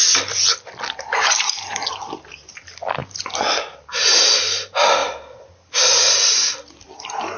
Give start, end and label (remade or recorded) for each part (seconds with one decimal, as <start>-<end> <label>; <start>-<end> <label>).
0.0-1.1 recorded; 1.1-1.8 remade; 1.8-7.4 recorded